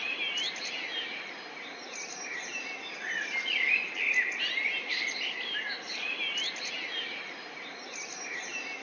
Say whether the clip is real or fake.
real